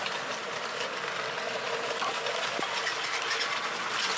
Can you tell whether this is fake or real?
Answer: real